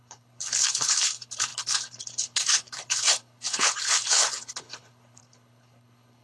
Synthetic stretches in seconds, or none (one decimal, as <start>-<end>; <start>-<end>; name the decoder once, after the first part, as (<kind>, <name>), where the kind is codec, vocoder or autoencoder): 0.0-6.2 (codec, HILCodec)